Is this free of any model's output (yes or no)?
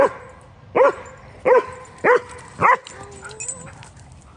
yes